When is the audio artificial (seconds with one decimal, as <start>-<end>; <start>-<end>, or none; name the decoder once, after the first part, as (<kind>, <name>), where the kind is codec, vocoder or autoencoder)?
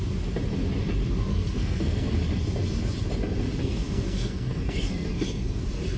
1.3-2.1 (codec, SNAC); 3.6-5.6